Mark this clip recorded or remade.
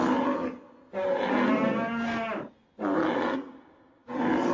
recorded